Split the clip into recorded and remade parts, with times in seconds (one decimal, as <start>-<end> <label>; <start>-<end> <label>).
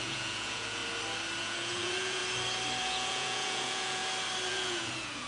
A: 0.0-0.8 remade; 0.8-1.4 recorded; 1.4-2.2 remade; 2.2-2.8 recorded; 2.8-4.0 remade; 4.0-4.5 recorded; 4.5-5.3 remade